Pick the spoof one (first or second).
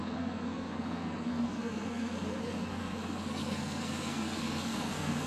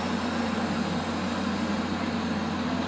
first